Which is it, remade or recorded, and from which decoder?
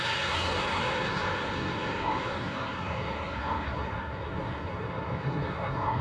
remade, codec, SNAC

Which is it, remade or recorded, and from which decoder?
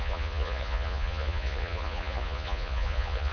remade, vocoder, Vocos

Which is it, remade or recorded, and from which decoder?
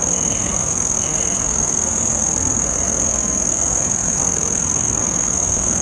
remade, codec, SNAC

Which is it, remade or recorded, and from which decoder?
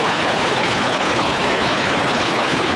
remade, codec, HILCodec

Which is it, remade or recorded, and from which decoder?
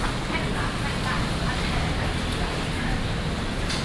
recorded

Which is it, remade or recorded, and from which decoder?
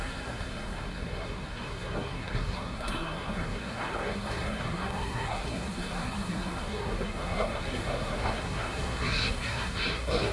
remade, codec, SNAC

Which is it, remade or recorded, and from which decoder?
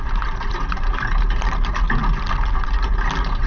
recorded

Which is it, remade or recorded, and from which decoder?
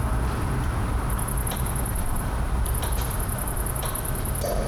remade, vocoder, BigVGAN v2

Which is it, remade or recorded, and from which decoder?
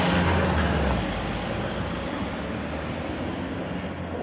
recorded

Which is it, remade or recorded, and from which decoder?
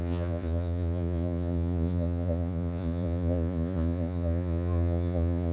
remade, vocoder, Vocos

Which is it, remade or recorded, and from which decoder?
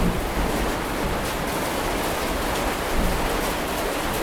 recorded